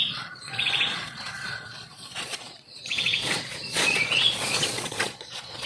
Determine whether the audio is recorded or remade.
remade